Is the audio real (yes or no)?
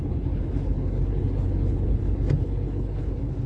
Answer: no